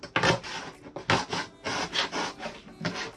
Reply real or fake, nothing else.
real